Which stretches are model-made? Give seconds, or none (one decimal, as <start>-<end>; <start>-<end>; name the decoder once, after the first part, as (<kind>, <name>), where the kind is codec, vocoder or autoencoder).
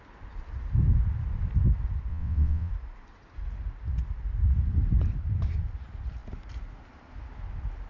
2.1-2.7 (vocoder, WaveNeXt)